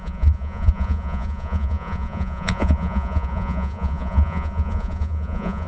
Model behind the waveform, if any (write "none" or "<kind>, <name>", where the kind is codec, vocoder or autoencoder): vocoder, Vocos